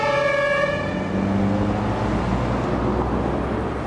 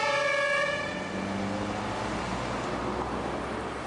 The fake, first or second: second